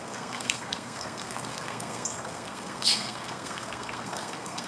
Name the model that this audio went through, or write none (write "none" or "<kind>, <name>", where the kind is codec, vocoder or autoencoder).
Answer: codec, SNAC